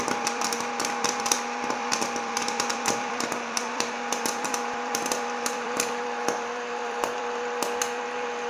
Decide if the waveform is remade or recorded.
remade